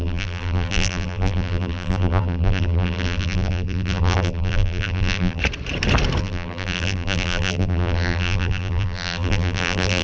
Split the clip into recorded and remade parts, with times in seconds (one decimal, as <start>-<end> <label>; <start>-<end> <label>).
0.0-5.4 remade; 5.4-6.2 recorded; 6.2-10.0 remade